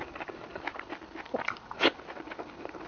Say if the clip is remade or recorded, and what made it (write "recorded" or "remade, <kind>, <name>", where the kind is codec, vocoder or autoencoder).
recorded